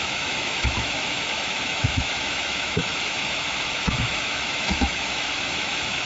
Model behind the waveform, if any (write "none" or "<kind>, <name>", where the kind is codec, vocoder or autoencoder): autoencoder, DAC-VAE